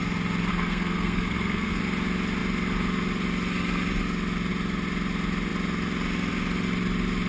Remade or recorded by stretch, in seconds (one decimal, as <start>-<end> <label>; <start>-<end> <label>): 0.0-0.5 recorded; 0.5-1.8 remade; 1.8-7.3 recorded